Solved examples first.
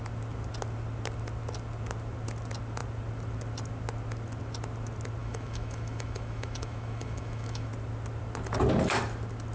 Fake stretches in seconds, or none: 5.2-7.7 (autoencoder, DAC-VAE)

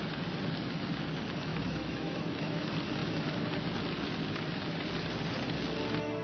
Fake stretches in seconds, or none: 1.5-2.6 (autoencoder, DAC-VAE)

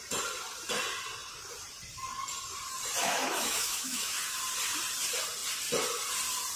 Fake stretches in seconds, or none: 3.0-4.2 (autoencoder, DAC-VAE)